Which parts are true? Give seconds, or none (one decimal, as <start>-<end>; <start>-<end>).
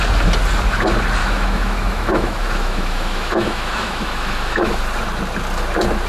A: 0.0-1.2; 4.8-6.1